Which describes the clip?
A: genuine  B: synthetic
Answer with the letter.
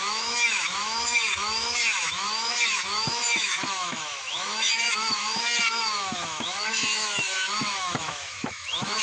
B